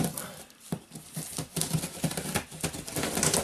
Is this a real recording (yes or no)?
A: yes